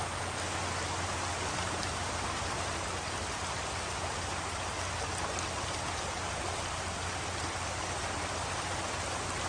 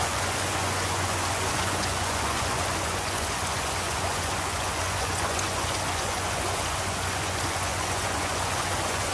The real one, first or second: first